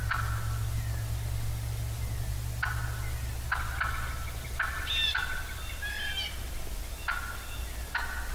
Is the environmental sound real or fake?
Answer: real